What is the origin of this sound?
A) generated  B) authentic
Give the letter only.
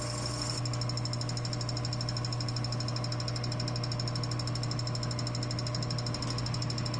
B